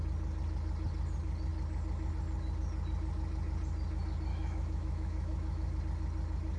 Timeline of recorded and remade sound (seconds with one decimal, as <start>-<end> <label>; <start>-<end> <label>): 0.0-4.3 recorded; 4.3-5.8 remade; 5.8-6.6 recorded